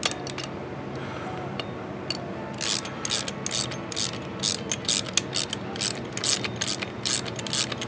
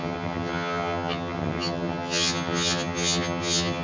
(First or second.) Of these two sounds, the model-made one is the second